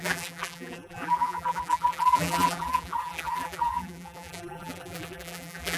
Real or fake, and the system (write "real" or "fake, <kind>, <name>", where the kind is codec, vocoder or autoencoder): fake, vocoder, BigVGAN v2